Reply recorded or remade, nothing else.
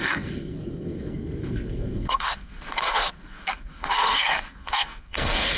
remade